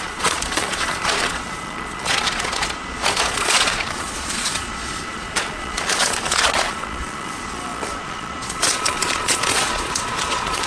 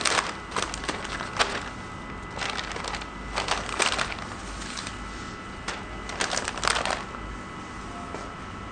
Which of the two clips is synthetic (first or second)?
first